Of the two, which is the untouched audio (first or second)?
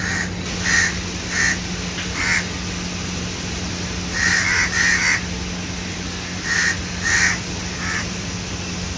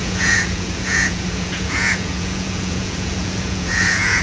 first